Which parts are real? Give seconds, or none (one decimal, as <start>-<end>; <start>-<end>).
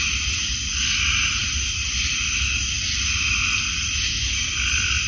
0.0-5.1